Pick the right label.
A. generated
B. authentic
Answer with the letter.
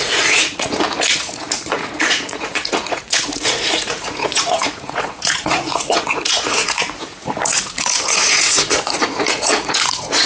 A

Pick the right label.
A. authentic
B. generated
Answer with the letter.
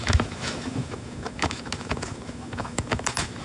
B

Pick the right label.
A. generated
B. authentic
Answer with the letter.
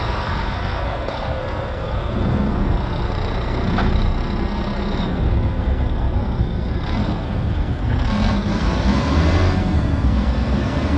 A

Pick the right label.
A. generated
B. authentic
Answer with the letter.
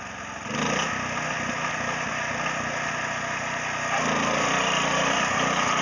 B